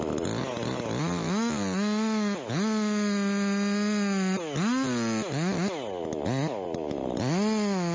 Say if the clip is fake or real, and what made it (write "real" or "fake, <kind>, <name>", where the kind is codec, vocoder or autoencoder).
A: real